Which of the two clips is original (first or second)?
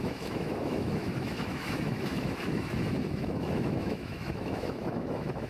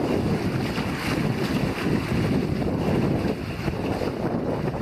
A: second